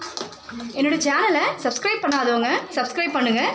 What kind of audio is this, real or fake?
real